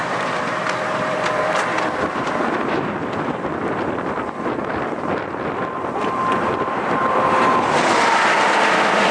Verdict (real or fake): fake